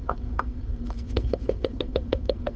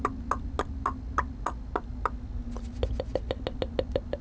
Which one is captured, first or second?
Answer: second